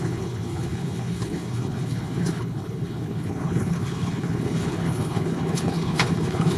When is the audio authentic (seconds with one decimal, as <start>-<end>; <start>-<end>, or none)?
none